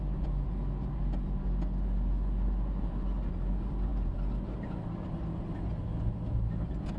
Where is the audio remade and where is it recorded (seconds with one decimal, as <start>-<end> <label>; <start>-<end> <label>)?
0.0-7.0 recorded